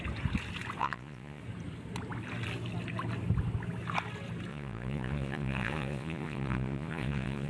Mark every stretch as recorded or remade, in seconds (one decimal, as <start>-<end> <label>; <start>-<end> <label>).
0.0-0.8 recorded; 0.8-1.4 remade; 1.4-4.5 recorded; 4.5-7.5 remade